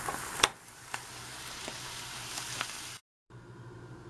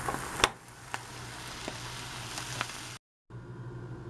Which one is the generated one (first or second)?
first